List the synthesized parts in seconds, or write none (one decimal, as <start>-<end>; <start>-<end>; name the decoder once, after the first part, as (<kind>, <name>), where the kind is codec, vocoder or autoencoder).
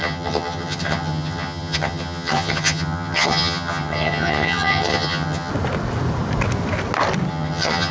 0.0-5.5 (vocoder, HiFi-GAN); 7.3-7.9